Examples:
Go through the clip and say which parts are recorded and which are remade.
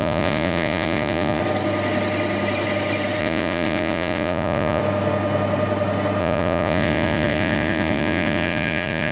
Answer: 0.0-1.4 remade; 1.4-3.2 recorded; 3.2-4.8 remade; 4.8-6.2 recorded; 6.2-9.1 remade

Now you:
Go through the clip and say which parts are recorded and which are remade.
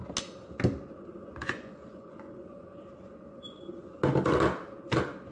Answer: 0.0-1.2 recorded; 1.2-2.9 remade; 2.9-5.3 recorded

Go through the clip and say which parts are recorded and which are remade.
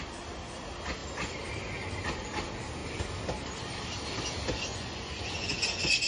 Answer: 0.0-4.7 recorded; 4.7-6.1 remade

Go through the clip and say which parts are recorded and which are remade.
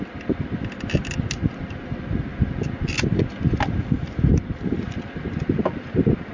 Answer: 0.0-6.3 recorded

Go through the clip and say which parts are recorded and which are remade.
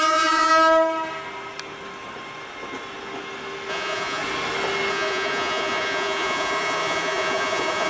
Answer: 0.0-0.5 remade; 0.5-3.7 recorded; 3.7-4.2 remade; 4.2-4.9 recorded; 4.9-7.9 remade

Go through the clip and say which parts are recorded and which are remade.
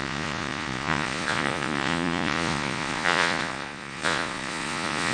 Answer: 0.0-5.1 remade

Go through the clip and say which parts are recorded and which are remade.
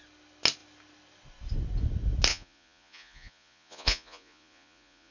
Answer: 0.0-2.3 recorded; 2.3-5.1 remade